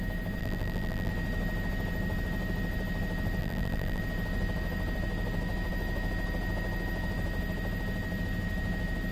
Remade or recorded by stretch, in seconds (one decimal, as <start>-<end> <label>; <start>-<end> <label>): 0.0-0.4 recorded; 0.4-1.1 remade; 1.1-3.4 recorded; 3.4-4.0 remade; 4.0-9.1 recorded